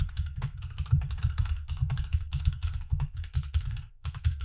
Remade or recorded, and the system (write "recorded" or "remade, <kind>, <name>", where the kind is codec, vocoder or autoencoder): remade, codec, SNAC